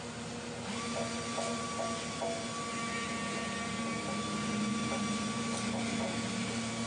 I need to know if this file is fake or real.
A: real